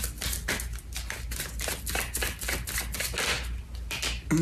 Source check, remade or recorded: recorded